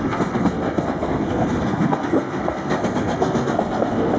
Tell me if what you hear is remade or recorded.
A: remade